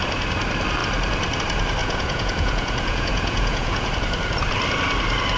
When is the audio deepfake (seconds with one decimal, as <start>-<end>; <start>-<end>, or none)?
1.8-3.9